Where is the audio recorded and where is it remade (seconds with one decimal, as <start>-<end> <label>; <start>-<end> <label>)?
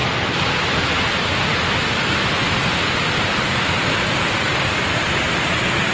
0.0-5.9 recorded